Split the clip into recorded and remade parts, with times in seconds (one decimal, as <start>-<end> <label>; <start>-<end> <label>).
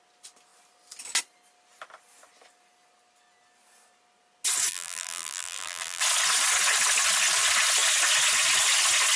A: 0.0-4.7 recorded; 4.7-6.0 remade; 6.0-9.2 recorded